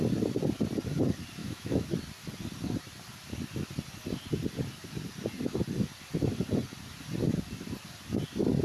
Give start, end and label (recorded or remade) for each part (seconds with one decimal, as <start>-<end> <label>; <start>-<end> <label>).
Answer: 0.0-1.4 recorded; 1.4-1.9 remade; 1.9-8.6 recorded